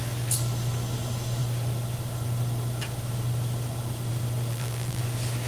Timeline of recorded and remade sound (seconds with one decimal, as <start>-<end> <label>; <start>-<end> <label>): 0.0-4.5 recorded; 4.5-5.0 remade; 5.0-5.5 recorded